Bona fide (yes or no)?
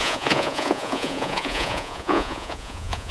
no